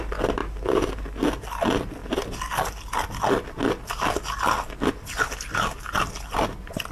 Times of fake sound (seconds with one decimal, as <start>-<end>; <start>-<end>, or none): none